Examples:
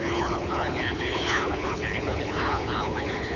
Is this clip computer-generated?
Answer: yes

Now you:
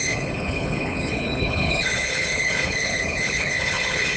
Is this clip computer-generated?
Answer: yes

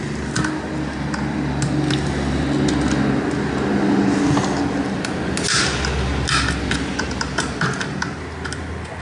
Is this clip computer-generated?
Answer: no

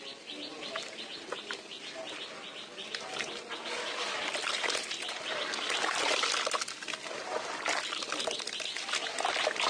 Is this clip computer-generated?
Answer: no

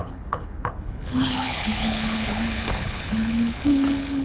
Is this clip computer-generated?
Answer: yes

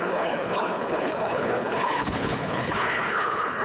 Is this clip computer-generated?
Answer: yes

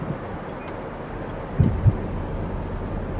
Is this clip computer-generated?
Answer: no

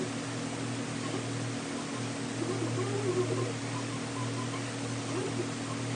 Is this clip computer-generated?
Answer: no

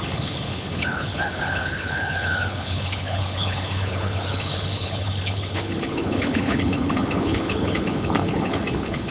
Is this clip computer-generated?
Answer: yes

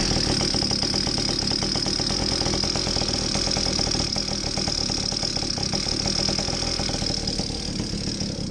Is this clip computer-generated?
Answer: no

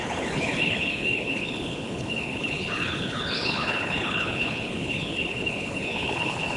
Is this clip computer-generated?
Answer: yes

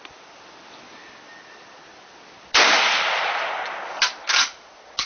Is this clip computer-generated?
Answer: no